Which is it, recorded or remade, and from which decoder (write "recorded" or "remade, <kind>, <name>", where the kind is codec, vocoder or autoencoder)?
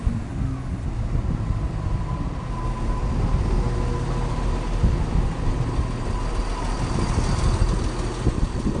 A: recorded